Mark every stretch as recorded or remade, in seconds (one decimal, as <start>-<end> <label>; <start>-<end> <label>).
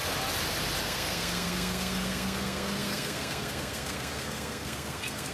0.0-0.8 recorded; 0.8-5.3 remade